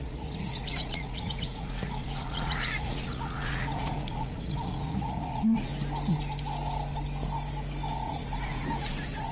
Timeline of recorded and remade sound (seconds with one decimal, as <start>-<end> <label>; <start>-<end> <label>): 0.0-5.7 remade; 5.7-7.9 recorded; 7.9-9.3 remade